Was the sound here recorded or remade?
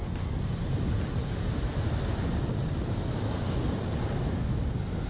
recorded